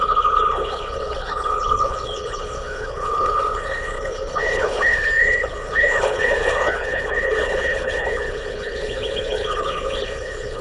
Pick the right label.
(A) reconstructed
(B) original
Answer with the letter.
A